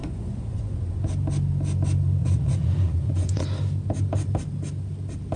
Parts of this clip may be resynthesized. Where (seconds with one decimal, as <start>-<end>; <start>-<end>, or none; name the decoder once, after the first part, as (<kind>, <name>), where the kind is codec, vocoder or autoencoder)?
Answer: 0.0-1.0 (vocoder, Vocos); 2.2-3.4

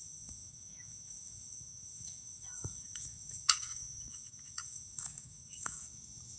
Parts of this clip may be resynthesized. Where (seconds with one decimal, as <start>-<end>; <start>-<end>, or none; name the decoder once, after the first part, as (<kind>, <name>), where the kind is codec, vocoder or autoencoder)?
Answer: 0.0-6.4 (autoencoder, DAC-VAE)

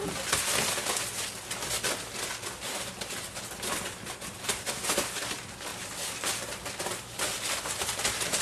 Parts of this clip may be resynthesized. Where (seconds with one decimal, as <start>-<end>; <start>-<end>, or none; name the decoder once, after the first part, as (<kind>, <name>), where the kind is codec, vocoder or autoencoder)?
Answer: none

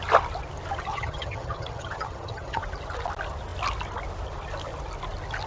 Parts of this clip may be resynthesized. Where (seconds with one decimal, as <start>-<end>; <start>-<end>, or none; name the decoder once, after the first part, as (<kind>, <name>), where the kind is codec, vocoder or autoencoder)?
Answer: 0.9-2.6 (vocoder, HiFi-GAN)

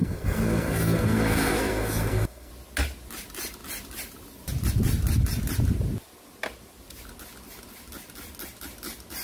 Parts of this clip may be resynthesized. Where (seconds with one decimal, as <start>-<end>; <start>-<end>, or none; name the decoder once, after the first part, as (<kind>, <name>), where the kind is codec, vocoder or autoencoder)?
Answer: 0.0-2.5 (codec, SNAC)

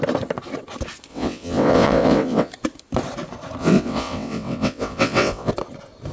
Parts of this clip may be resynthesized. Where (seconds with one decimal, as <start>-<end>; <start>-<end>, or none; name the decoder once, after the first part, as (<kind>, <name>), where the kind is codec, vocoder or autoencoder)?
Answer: 1.1-2.5 (vocoder, WaveNeXt); 3.6-5.5